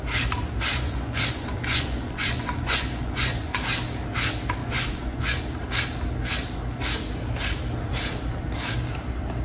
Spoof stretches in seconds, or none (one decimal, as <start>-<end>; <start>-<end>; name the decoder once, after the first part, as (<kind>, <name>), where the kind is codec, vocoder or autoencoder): 0.7-3.6 (vocoder, Vocos); 4.6-5.4